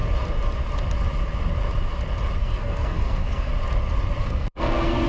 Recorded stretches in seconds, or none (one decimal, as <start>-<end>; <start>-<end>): 0.0-2.4; 3.5-4.2